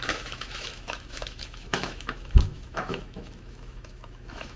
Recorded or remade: remade